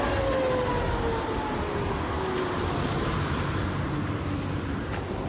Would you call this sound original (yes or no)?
yes